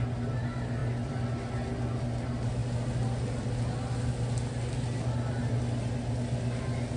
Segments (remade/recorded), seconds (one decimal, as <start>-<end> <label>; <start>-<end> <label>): 0.0-7.0 recorded